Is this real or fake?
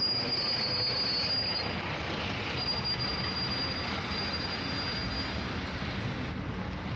real